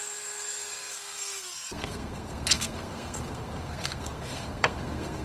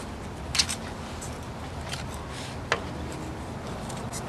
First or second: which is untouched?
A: second